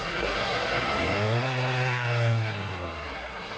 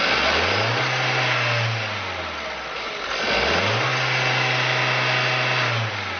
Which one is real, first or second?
second